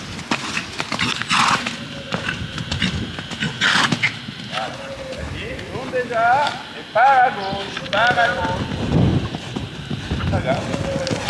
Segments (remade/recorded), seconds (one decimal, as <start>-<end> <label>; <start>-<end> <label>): 0.0-9.1 recorded; 9.1-9.8 remade; 9.8-11.3 recorded